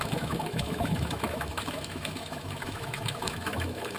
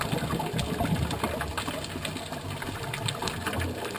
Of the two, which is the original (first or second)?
second